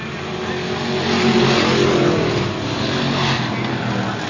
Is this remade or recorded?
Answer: recorded